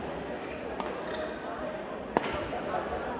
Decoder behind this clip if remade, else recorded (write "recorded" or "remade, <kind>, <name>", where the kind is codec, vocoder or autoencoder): recorded